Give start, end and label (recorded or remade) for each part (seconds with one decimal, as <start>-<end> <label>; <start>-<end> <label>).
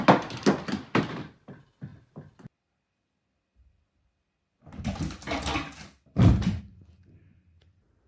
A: 0.0-8.1 recorded